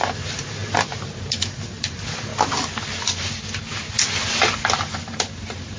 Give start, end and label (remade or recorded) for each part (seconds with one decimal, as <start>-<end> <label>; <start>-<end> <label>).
0.0-5.8 recorded